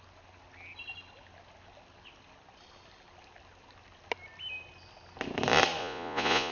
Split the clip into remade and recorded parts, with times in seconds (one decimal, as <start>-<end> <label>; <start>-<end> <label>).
0.0-5.8 recorded; 5.8-6.5 remade